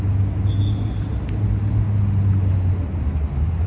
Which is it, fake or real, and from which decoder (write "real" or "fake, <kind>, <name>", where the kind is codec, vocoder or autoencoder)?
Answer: real